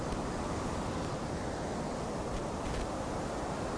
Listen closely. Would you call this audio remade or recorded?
recorded